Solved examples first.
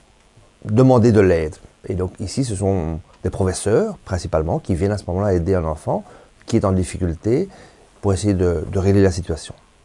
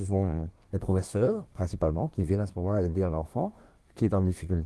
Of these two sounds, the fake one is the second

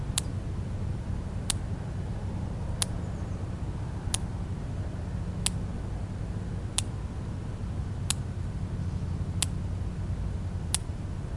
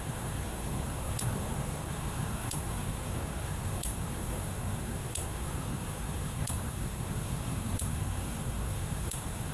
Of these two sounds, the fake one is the second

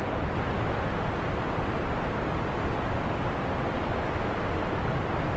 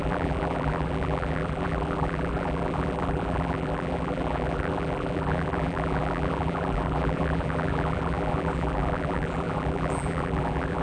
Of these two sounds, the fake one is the second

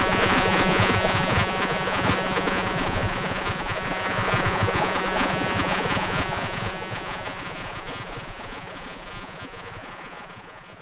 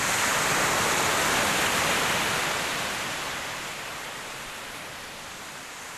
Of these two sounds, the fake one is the first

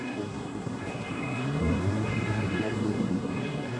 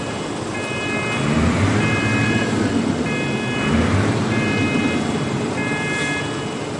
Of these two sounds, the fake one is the first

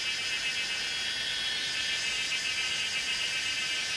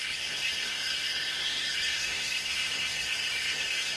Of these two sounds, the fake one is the second